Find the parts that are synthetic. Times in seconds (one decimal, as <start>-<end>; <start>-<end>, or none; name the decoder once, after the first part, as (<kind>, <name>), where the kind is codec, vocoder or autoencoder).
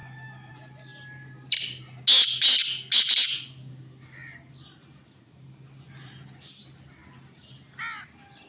none